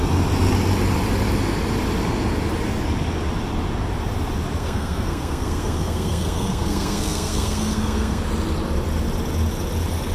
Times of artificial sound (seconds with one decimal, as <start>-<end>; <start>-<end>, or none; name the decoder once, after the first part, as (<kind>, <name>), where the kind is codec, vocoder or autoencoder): 4.6-8.2 (codec, SNAC)